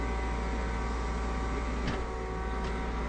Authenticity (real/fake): real